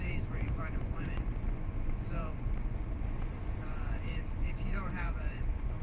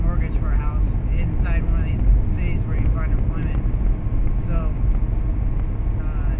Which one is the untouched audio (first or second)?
second